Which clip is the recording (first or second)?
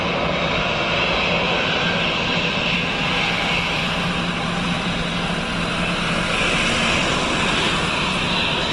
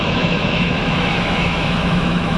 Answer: first